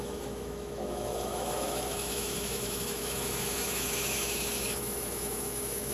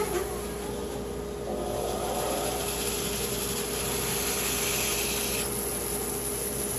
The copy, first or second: first